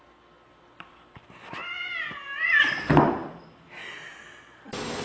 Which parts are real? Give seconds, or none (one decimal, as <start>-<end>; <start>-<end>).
0.0-5.0

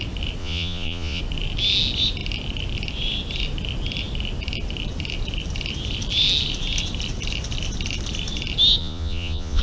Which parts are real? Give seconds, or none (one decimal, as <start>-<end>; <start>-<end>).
0.0-0.4; 1.2-8.8

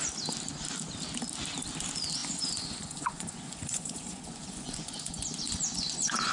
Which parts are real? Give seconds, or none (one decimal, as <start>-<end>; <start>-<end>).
0.0-2.2

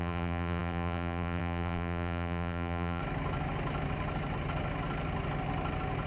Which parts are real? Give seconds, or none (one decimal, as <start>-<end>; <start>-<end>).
3.0-6.1

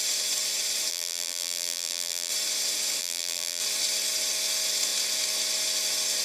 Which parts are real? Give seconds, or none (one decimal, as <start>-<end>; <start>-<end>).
0.0-0.9; 2.3-3.0; 3.6-6.2